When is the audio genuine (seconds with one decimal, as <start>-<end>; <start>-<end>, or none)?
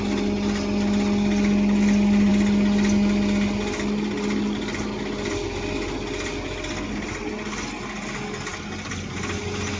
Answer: 0.0-9.8